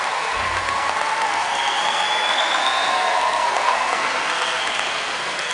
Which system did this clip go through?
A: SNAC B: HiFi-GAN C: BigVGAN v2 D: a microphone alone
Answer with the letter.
A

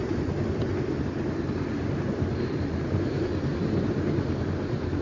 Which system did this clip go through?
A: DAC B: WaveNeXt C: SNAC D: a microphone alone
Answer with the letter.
D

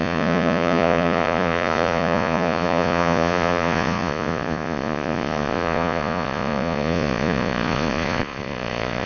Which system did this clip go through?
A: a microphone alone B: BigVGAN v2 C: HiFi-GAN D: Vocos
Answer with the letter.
D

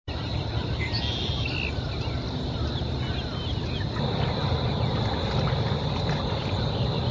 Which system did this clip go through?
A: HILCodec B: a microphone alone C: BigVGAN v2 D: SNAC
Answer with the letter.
B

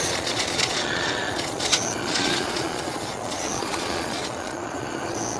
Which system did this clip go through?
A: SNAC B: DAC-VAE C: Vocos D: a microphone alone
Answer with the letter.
C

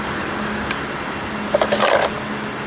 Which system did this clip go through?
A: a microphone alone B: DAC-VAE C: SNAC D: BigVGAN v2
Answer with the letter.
A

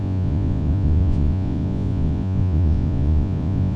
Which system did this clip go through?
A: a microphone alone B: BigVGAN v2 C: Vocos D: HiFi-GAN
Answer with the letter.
C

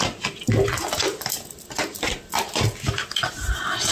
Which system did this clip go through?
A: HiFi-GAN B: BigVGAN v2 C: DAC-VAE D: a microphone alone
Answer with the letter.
D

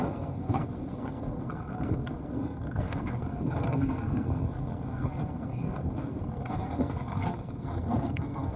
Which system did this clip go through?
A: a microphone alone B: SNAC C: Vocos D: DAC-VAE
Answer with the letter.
B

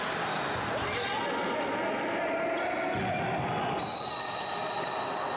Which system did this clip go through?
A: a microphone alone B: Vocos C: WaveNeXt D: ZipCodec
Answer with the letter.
A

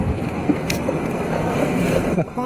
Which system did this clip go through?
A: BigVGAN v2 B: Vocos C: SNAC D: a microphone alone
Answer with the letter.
C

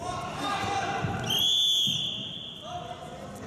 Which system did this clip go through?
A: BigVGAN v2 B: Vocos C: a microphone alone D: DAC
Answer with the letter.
C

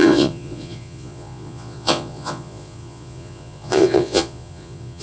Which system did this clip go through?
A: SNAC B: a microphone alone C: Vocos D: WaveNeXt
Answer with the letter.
C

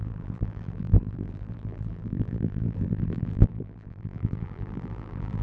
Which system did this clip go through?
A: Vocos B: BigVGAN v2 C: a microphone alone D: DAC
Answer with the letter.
B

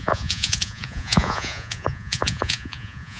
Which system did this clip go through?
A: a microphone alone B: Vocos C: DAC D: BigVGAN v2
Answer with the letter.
B